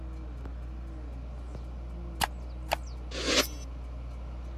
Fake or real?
real